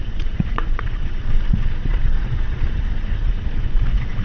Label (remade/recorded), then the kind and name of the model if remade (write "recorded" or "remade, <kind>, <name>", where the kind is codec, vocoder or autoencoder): remade, vocoder, Vocos